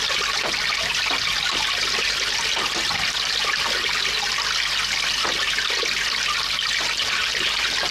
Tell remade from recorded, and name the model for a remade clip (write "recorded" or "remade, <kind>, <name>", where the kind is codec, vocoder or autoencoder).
recorded